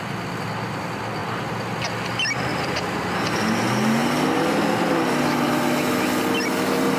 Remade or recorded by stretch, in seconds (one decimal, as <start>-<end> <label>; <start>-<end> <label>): 0.0-2.5 recorded; 2.5-3.4 remade; 3.4-7.0 recorded